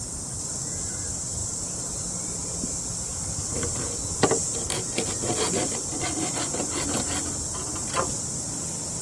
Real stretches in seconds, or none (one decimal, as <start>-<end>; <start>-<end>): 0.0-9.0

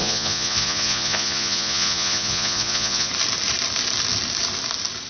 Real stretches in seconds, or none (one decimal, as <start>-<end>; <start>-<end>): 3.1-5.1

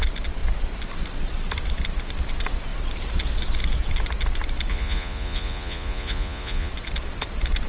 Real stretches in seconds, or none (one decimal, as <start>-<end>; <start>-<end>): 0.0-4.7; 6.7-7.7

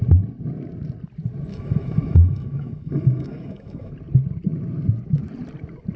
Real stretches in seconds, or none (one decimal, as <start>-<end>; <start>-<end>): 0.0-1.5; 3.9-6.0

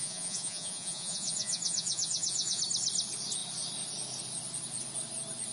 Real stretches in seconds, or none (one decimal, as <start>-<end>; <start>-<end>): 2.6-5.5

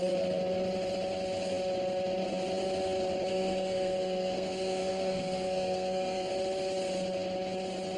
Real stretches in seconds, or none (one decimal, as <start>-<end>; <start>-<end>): 0.0-3.3; 6.3-8.0